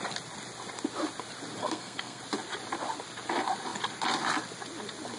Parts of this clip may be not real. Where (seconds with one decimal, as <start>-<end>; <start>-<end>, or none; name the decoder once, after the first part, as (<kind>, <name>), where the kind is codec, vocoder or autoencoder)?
1.6-2.2 (codec, SNAC)